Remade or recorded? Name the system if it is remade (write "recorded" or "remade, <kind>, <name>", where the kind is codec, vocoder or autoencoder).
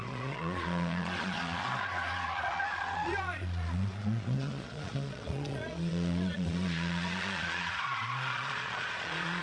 remade, vocoder, Vocos